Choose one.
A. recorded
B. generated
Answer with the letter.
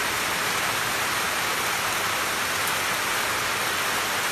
A